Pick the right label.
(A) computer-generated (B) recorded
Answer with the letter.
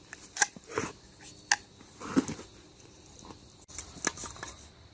B